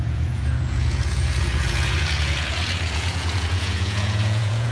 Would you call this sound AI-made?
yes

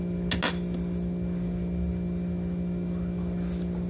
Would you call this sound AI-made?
no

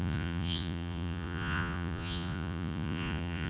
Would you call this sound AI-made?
yes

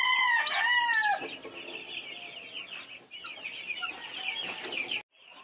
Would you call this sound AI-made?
no